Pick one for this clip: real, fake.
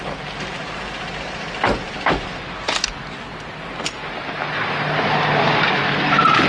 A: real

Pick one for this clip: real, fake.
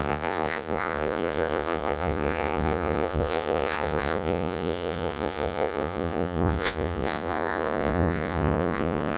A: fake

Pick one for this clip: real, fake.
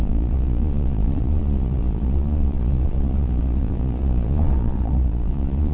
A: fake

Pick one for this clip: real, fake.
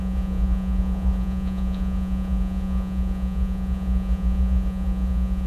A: fake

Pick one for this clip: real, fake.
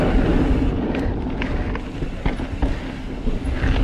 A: real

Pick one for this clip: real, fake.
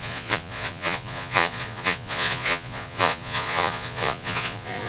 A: fake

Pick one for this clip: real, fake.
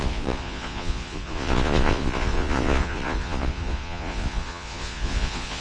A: fake